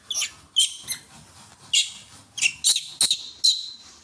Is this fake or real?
real